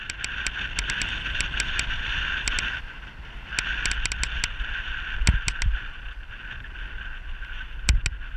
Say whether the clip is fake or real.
real